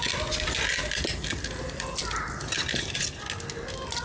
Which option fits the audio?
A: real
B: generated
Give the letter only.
A